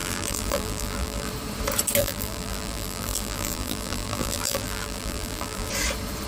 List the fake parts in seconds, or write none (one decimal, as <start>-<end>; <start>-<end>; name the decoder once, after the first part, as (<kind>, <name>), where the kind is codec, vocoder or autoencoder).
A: 0.0-1.3 (vocoder, BigVGAN v2); 2.0-5.7